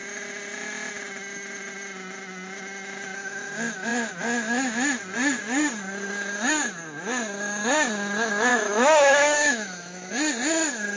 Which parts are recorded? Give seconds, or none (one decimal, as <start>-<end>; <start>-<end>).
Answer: 0.0-8.5; 10.1-11.0